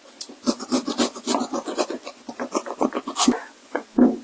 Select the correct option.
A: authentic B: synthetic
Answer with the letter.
B